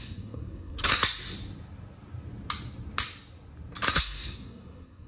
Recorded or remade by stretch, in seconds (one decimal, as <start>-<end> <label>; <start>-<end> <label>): 0.0-0.9 remade; 0.9-3.9 recorded; 3.9-5.1 remade